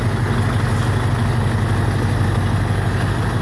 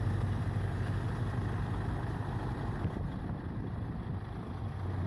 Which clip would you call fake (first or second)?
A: second